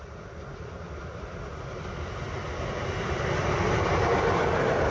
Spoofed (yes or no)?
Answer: no